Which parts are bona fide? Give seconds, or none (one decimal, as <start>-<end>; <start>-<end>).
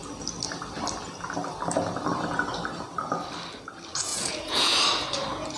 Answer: 0.0-4.1; 4.8-5.6